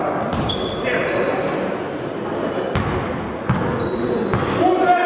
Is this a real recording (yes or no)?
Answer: yes